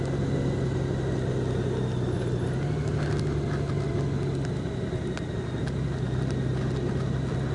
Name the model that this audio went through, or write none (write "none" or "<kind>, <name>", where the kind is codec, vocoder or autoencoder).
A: none